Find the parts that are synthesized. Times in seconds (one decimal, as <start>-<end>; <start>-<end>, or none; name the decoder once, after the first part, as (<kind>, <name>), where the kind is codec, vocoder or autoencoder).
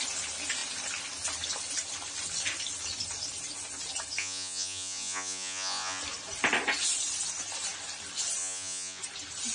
4.2-6.0 (vocoder, Vocos); 8.4-9.0